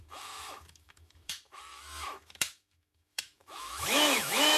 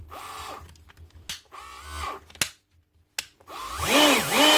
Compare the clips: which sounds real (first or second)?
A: second